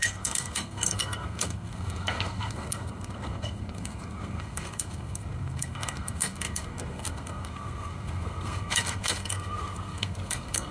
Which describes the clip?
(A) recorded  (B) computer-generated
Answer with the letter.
B